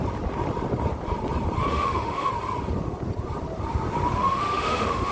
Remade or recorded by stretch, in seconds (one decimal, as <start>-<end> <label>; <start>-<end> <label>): 0.0-1.7 recorded; 1.7-2.3 remade; 2.3-4.2 recorded; 4.2-5.1 remade

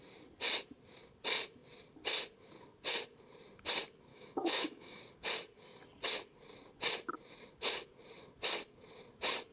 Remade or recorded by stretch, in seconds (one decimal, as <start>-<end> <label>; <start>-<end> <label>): 0.0-4.1 recorded; 4.1-5.0 remade; 5.0-9.5 recorded

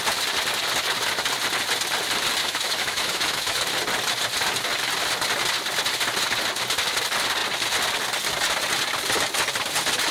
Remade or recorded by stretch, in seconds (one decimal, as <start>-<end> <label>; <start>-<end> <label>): 0.0-2.4 recorded; 2.4-3.6 remade; 3.6-10.1 recorded